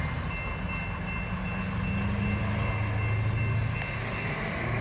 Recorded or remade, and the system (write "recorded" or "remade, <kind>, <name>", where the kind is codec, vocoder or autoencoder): recorded